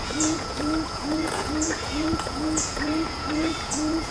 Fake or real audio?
fake